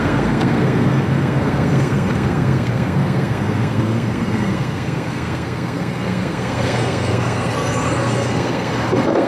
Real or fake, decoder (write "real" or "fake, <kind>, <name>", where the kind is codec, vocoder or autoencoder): fake, codec, SNAC